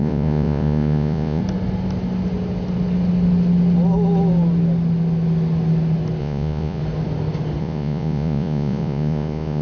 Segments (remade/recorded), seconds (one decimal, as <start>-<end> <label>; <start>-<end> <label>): 0.0-1.4 remade; 1.4-6.2 recorded; 6.2-6.8 remade; 6.8-7.6 recorded; 7.6-9.6 remade